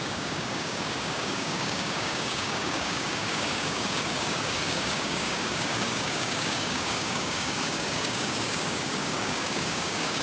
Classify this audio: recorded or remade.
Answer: remade